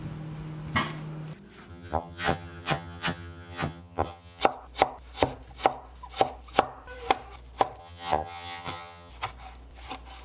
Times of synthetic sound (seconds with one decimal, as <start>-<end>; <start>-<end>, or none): 1.7-4.4; 7.8-9.1

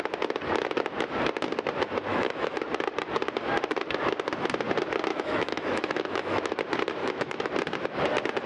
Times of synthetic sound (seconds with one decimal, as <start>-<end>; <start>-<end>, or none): 2.1-2.6; 5.1-6.4; 7.0-7.5

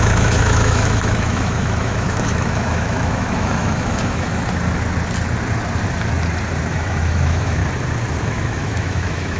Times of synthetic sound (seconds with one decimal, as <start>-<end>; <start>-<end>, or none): 0.0-4.3; 6.7-7.6; 8.2-9.4